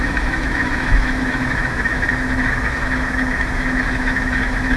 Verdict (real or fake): fake